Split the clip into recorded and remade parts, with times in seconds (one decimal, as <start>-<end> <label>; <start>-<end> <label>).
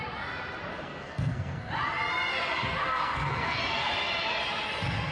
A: 0.0-0.7 recorded; 0.7-1.7 remade; 1.7-2.8 recorded; 2.8-3.6 remade; 3.6-5.1 recorded